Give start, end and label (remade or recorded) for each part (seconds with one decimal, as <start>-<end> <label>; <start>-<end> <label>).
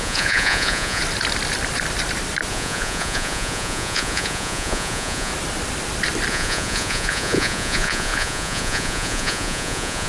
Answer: 0.0-1.0 remade; 1.0-2.5 recorded; 2.5-5.3 remade; 5.3-6.3 recorded; 6.3-10.1 remade